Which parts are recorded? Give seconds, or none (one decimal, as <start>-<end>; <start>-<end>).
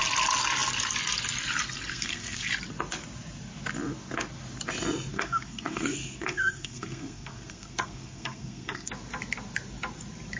0.0-1.9; 2.5-5.1; 8.9-10.4